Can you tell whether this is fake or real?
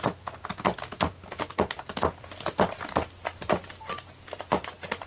real